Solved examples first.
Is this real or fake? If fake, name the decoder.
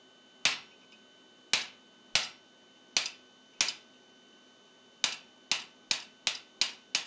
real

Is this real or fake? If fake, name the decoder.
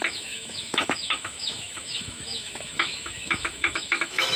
fake, autoencoder, DAC-VAE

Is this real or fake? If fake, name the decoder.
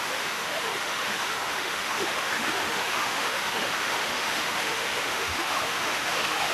fake, autoencoder, DAC-VAE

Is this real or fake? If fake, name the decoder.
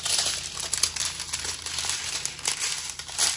real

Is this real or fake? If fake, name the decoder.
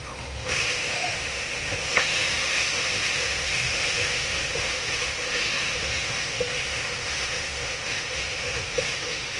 fake, autoencoder, DAC-VAE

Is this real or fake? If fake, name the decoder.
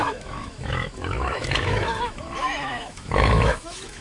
fake, autoencoder, DAC-VAE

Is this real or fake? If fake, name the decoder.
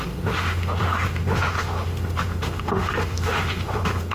fake, autoencoder, DAC-VAE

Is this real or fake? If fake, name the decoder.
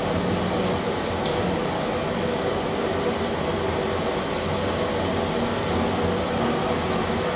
real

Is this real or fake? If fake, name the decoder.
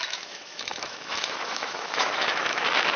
fake, autoencoder, DAC-VAE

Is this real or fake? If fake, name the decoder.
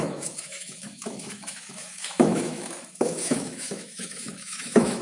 fake, autoencoder, DAC-VAE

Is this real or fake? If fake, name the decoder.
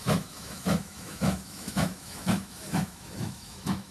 fake, autoencoder, DAC-VAE